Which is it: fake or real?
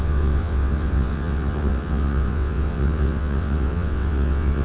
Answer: fake